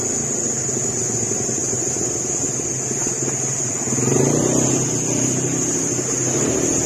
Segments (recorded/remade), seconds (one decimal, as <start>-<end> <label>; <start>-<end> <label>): 0.0-6.9 recorded